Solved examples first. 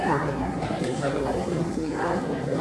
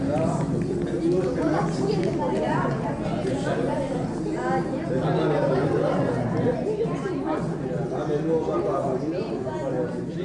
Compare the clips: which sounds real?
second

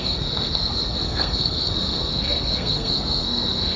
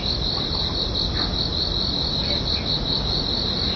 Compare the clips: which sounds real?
second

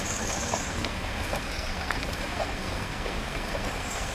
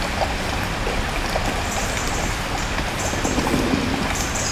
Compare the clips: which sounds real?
second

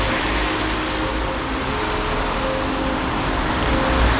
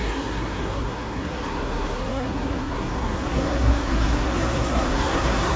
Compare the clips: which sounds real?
first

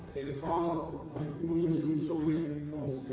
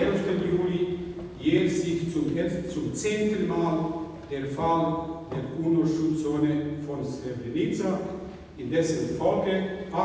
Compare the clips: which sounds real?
second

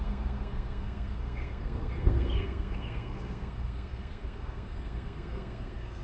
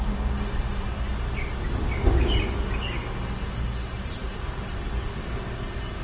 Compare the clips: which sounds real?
second